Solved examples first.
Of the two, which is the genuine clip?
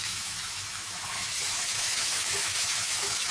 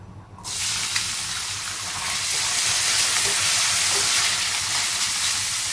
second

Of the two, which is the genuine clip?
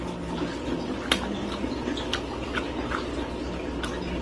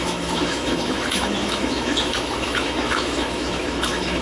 first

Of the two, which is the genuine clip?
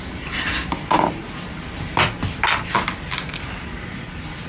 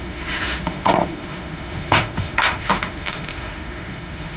first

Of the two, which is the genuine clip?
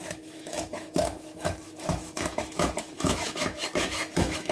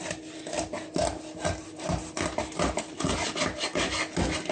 second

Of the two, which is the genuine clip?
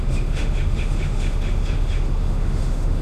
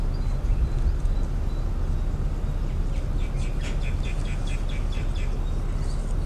second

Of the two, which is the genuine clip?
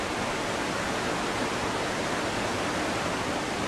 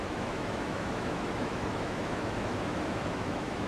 first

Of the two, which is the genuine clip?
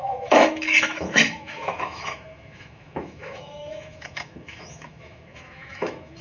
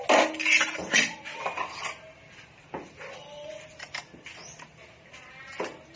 second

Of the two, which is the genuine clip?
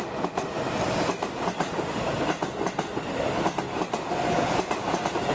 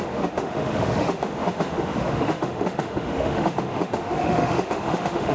first